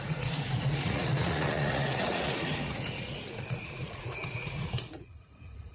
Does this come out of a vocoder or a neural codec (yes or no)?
yes